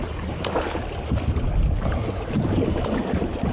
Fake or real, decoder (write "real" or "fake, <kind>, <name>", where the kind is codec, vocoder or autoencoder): real